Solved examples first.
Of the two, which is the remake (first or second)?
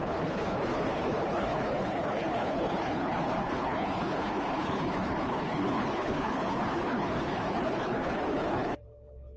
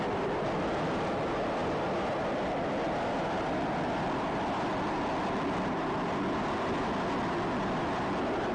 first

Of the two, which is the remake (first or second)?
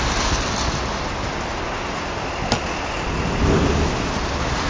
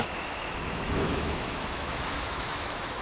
second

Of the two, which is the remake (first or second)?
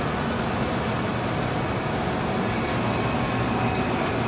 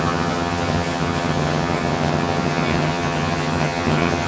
second